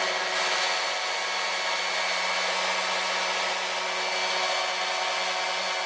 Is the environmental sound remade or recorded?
recorded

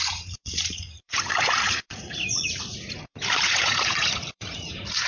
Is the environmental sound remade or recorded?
remade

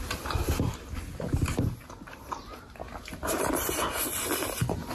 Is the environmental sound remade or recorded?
recorded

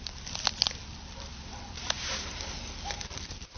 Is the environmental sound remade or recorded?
recorded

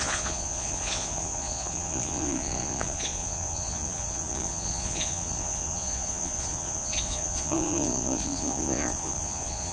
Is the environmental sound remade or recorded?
remade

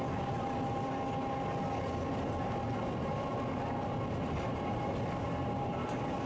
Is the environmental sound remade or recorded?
recorded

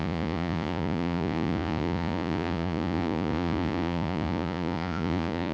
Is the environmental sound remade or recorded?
remade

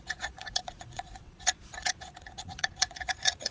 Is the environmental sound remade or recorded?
remade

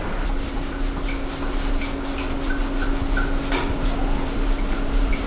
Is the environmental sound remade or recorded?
recorded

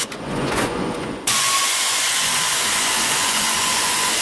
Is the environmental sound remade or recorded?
remade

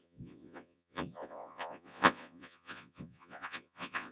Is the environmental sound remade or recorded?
remade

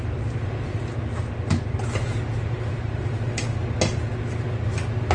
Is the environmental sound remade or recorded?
recorded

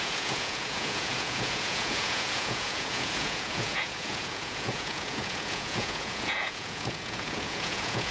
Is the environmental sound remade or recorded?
remade